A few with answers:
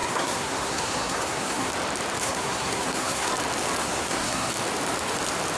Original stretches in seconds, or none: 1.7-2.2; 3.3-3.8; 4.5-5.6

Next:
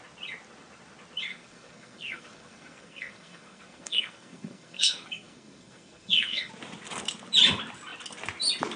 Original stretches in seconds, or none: 0.0-1.3; 6.5-8.8

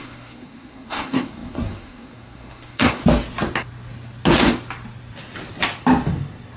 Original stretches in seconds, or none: 3.0-6.6

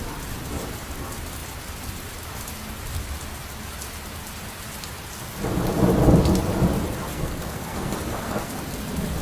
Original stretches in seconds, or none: 0.0-7.1; 8.5-9.2

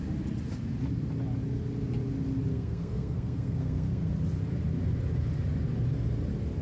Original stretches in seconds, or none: 0.0-2.5; 4.1-6.6

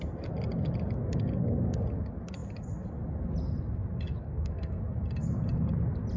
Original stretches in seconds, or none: 0.0-4.2; 4.8-6.2

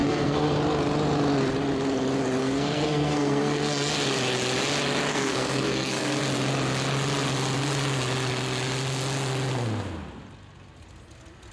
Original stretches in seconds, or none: 0.6-2.4; 3.9-5.1; 6.2-11.5

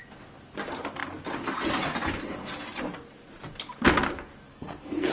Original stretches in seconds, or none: 0.0-4.5